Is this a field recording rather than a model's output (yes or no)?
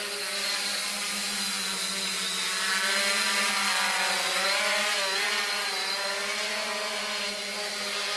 yes